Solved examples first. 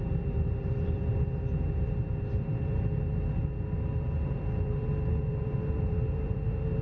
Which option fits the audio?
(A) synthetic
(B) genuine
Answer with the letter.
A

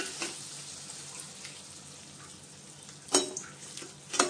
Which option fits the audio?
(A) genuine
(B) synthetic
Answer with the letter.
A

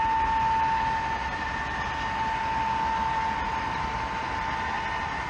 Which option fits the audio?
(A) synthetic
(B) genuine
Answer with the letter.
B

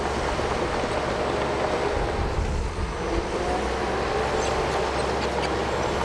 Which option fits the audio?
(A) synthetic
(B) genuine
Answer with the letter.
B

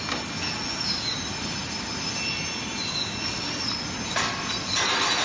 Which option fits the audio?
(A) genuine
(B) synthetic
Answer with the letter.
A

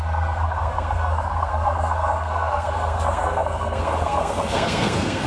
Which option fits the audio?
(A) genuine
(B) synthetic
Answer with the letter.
B